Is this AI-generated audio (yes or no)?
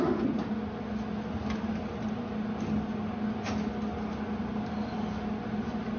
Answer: no